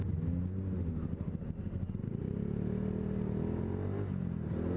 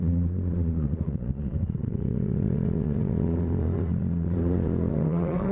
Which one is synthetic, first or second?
second